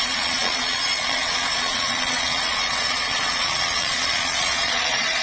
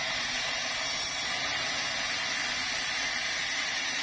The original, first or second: second